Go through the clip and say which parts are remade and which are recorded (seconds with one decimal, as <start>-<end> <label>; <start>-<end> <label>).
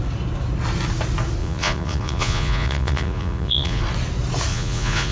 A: 0.0-1.4 recorded; 1.4-3.8 remade; 3.8-4.5 recorded; 4.5-5.1 remade